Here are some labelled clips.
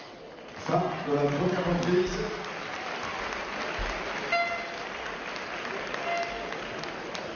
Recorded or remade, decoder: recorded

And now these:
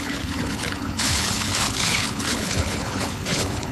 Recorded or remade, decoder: remade, codec, HILCodec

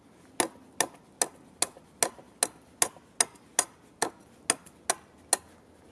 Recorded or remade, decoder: recorded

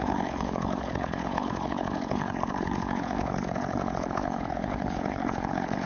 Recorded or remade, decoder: remade, codec, HILCodec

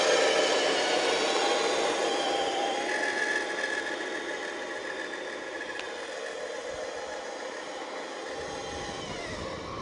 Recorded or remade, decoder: recorded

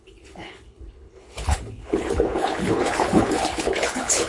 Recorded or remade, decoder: remade, codec, HILCodec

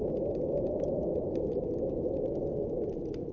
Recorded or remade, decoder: recorded